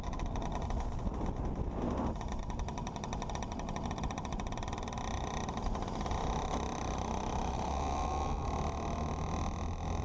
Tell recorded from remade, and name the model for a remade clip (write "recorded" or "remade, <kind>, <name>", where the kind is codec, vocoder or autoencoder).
recorded